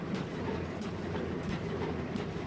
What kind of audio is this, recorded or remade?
remade